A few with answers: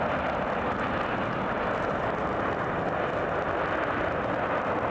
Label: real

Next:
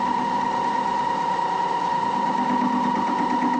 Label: real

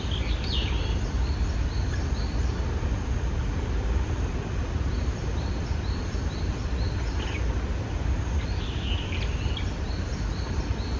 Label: real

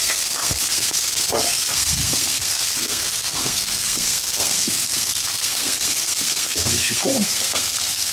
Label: fake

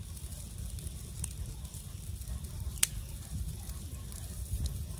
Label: real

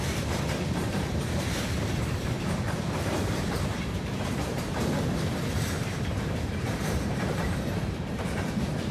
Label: fake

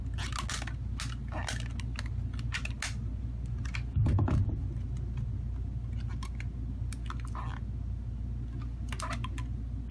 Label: real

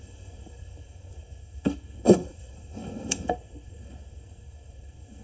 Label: fake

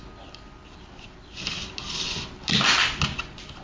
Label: real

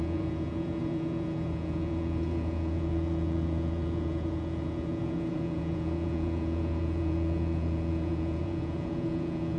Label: fake